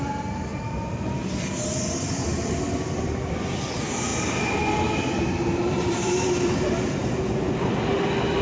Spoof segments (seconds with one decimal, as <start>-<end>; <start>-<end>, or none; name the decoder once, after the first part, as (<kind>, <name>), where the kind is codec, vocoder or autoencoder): 4.1-6.6 (vocoder, BigVGAN v2)